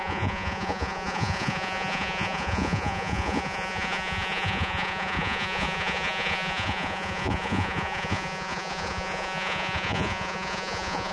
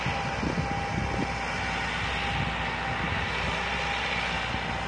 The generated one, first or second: first